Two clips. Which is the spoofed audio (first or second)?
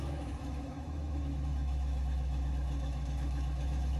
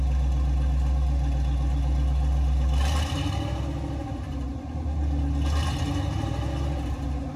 first